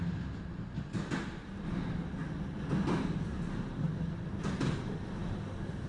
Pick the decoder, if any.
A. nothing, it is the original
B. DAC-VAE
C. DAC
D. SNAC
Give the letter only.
A